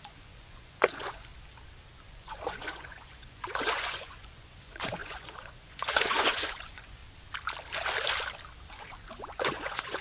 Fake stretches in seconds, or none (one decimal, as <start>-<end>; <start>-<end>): 0.0-1.3; 2.0-7.0; 8.7-10.0